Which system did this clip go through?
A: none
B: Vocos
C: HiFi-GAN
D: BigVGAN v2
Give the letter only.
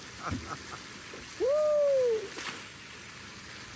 A